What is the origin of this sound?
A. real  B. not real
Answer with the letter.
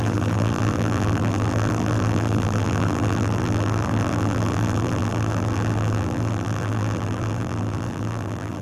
B